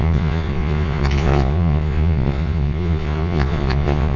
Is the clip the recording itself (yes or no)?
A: no